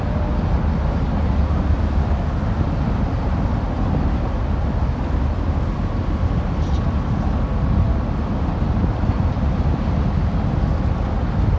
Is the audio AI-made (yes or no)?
no